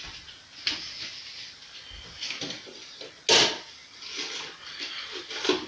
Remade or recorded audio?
recorded